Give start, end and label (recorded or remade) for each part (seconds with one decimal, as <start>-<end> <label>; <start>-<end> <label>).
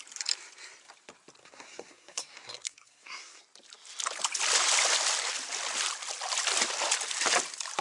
0.0-1.4 recorded; 1.4-3.4 remade; 3.4-7.8 recorded